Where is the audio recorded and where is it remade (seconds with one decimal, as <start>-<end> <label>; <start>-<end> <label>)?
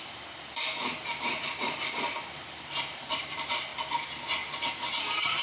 0.0-3.7 remade; 3.7-5.0 recorded; 5.0-5.4 remade